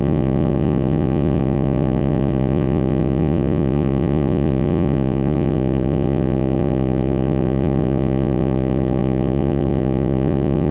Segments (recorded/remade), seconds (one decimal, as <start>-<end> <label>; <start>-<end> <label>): 0.0-10.7 remade

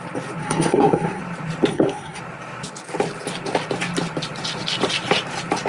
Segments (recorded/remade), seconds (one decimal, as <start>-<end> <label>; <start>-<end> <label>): 0.0-0.4 recorded; 0.4-1.2 remade; 1.2-1.7 recorded; 1.7-2.2 remade; 2.2-5.7 recorded

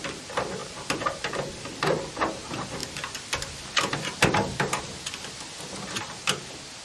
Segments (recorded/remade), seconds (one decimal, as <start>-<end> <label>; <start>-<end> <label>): 0.0-6.8 recorded

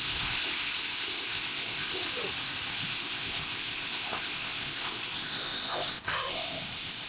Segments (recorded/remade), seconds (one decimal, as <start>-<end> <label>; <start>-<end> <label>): 0.0-2.0 remade; 2.0-2.7 recorded; 2.7-7.1 remade

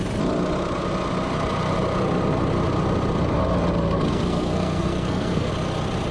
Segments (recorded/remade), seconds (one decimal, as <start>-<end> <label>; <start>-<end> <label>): 0.0-4.1 recorded; 4.1-5.5 remade; 5.5-6.1 recorded

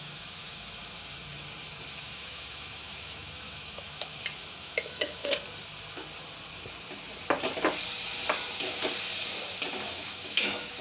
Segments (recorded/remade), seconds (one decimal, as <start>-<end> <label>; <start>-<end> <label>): 0.0-0.8 remade; 0.8-2.0 recorded; 2.0-4.1 remade; 4.1-4.6 recorded; 4.6-5.2 remade; 5.2-9.9 recorded; 9.9-10.8 remade

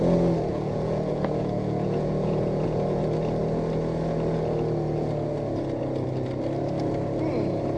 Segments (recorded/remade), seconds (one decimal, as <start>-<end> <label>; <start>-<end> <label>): 0.0-0.5 recorded; 0.5-3.0 remade; 3.0-7.8 recorded